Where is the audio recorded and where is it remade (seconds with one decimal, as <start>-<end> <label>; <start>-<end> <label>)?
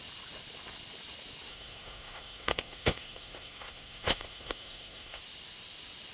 0.0-1.5 recorded; 1.5-5.2 remade; 5.2-6.1 recorded